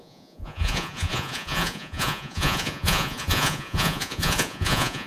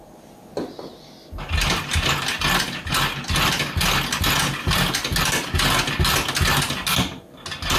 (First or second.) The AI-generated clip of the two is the first